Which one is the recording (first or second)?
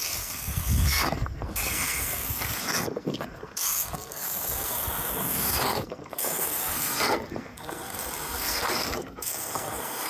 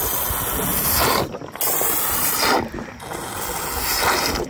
second